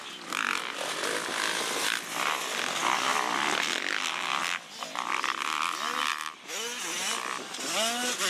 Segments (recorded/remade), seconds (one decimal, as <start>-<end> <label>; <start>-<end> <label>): 0.0-8.3 recorded

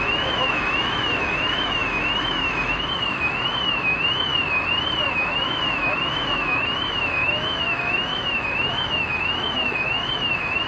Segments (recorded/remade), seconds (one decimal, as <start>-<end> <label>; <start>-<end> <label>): 0.0-4.3 remade; 4.3-5.1 recorded; 5.1-10.7 remade

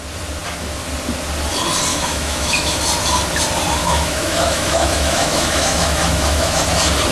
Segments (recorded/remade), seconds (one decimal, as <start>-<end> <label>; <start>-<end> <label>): 0.0-1.9 recorded; 1.9-2.8 remade; 2.8-3.8 recorded; 3.8-6.6 remade; 6.6-7.1 recorded

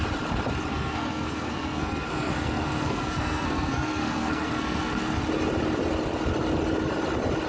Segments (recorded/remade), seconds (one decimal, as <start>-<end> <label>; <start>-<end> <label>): 0.0-0.7 recorded; 0.7-5.2 remade; 5.2-7.5 recorded

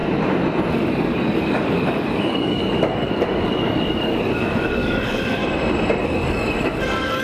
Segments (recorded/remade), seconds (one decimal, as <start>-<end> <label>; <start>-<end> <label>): 0.0-0.7 recorded; 0.7-5.4 remade; 5.4-6.0 recorded; 6.0-7.2 remade

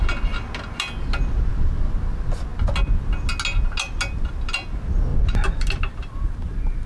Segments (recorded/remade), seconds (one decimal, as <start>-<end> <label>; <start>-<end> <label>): 0.0-6.9 recorded

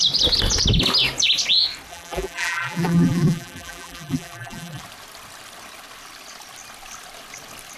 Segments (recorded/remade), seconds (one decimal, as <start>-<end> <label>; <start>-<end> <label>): 0.0-1.9 recorded; 1.9-4.8 remade; 4.8-7.8 recorded

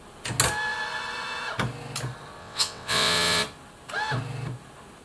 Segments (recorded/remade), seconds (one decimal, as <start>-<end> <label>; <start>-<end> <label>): 0.0-2.4 recorded; 2.4-3.4 remade; 3.4-5.0 recorded